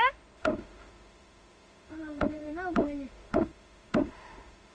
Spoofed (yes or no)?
yes